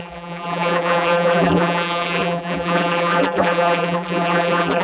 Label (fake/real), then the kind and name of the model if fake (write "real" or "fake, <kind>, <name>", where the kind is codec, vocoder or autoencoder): fake, vocoder, BigVGAN v2